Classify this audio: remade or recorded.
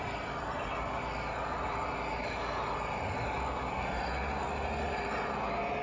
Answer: recorded